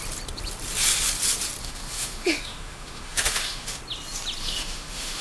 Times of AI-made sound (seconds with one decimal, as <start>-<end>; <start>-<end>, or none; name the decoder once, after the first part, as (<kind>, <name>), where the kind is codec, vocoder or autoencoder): 1.6-3.8 (autoencoder, DAC-VAE); 4.4-5.2